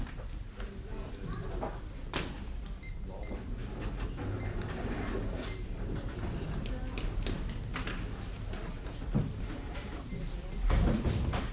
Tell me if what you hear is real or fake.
real